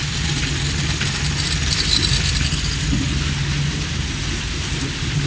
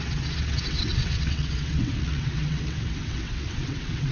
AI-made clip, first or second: second